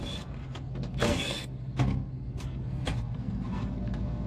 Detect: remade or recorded remade